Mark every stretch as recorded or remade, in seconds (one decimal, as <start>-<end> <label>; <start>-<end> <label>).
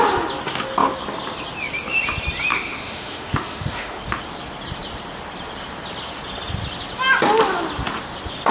0.0-2.5 recorded; 2.5-4.0 remade; 4.0-8.5 recorded